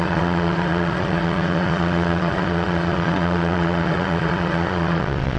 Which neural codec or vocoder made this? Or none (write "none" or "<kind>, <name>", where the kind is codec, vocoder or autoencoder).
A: vocoder, Vocos